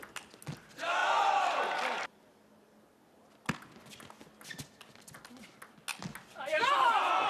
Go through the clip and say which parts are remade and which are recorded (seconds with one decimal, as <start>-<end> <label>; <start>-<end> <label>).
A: 0.0-7.3 recorded